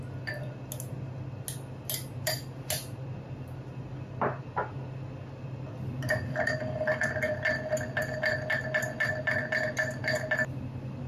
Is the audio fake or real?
real